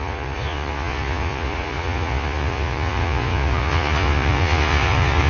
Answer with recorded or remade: remade